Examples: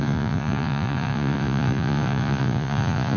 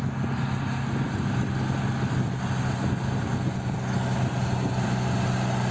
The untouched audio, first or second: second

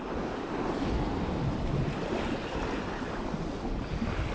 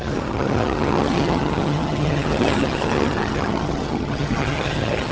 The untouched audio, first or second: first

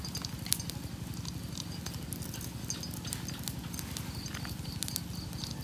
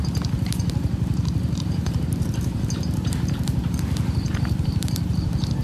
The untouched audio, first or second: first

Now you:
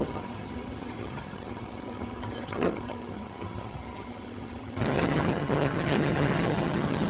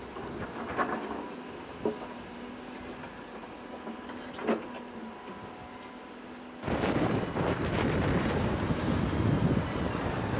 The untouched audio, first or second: second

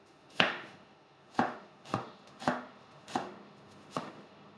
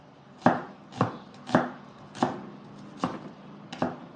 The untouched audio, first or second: second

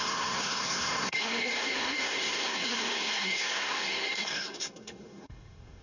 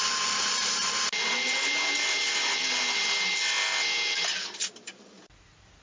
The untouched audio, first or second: second